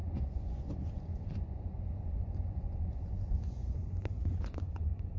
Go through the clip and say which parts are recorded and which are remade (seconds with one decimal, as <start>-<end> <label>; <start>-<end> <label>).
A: 0.0-5.2 remade